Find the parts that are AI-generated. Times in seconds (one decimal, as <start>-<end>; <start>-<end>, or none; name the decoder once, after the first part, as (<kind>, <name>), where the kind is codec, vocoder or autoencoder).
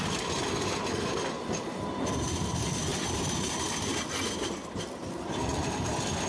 2.9-3.7 (vocoder, BigVGAN v2)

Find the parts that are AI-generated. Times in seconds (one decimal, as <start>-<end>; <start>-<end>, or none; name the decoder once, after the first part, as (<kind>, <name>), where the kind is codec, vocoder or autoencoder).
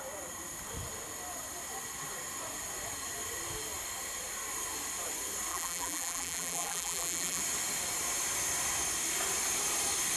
5.5-7.4 (vocoder, BigVGAN v2)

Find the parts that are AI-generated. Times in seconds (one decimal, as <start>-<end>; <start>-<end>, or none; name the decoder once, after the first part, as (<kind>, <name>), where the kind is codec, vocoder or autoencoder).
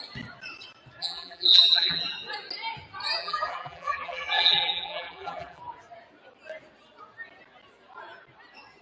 1.0-2.0 (vocoder, BigVGAN v2); 3.2-5.6